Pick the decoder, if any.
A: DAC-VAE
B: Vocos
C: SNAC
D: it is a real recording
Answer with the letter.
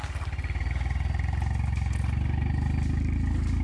D